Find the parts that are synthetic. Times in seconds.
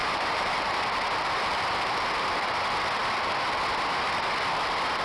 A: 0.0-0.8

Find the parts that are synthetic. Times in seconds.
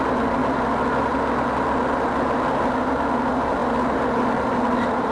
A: 3.6-5.1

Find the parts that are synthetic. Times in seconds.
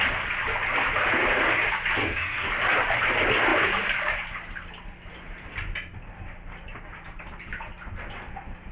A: 2.0-2.5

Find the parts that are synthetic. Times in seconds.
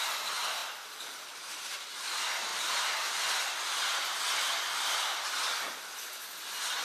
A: none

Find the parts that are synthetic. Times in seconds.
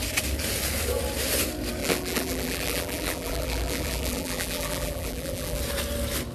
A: 1.8-5.6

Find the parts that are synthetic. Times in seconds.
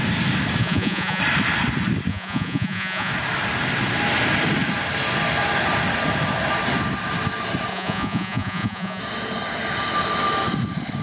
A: 0.6-1.2; 2.1-3.1; 7.7-9.0